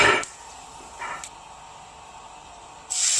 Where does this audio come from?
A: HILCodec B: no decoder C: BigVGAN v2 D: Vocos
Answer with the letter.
B